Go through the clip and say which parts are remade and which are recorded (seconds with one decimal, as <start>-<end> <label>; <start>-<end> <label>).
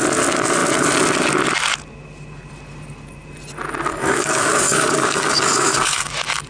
0.0-3.9 recorded; 3.9-6.1 remade; 6.1-6.5 recorded